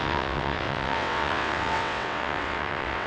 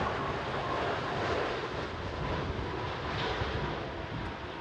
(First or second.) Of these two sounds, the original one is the second